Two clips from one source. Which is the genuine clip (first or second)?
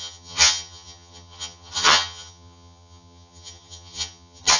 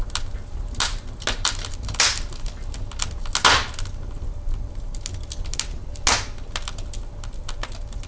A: second